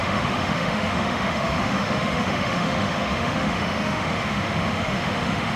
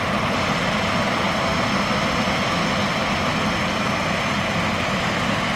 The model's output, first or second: first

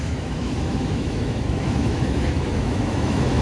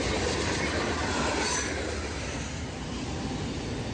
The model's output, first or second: first